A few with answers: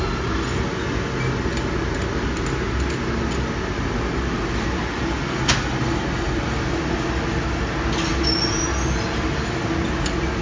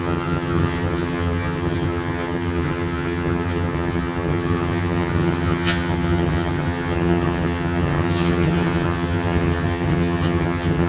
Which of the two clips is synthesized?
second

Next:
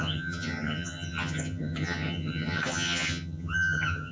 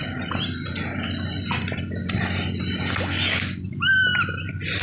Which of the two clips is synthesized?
first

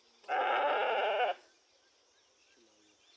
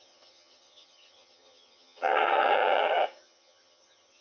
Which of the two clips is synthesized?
second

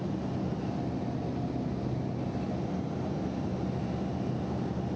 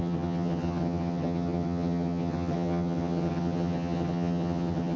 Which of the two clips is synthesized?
second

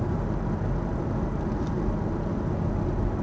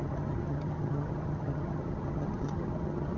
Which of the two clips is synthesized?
second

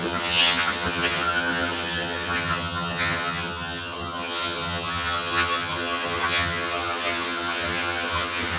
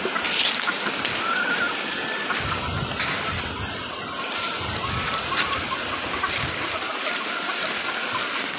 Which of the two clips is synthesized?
first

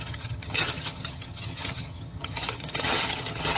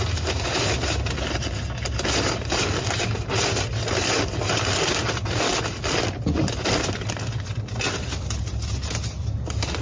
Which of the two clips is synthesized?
first